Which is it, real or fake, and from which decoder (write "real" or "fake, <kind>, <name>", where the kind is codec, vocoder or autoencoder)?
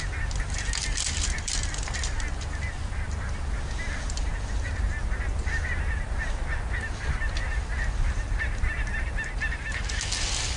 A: real